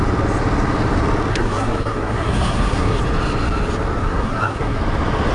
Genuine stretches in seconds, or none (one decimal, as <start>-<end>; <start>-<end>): 0.0-1.3; 3.0-4.0; 4.8-5.3